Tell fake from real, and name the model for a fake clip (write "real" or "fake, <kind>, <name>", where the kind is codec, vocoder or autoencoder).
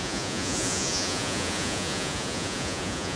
fake, vocoder, Vocos